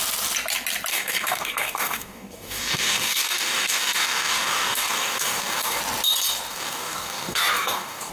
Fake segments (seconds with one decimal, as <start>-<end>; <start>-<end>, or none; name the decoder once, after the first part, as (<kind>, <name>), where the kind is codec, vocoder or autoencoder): 0.9-5.8 (codec, DAC); 6.5-8.1